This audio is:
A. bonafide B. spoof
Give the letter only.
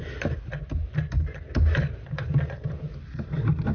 A